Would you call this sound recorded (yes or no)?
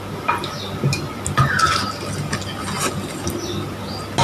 yes